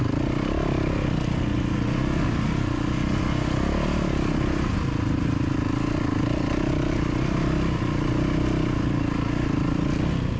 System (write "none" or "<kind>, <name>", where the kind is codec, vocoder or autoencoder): none